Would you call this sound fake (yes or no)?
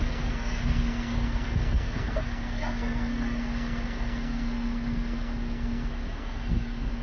yes